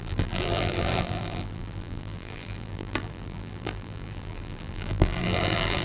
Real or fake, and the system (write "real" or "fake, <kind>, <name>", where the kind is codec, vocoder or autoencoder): fake, vocoder, BigVGAN v2